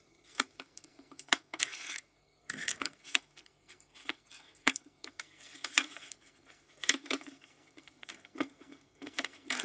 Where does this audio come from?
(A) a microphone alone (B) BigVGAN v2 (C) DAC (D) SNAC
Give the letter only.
D